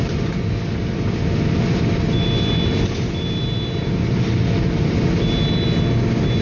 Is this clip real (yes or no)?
yes